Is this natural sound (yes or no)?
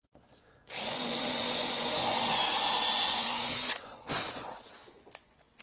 no